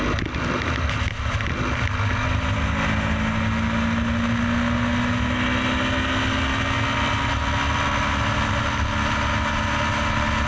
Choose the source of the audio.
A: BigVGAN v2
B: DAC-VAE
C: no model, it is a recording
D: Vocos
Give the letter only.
C